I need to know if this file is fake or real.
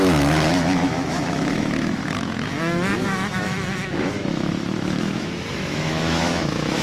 fake